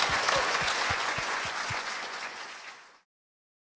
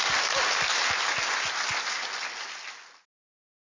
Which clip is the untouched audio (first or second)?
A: second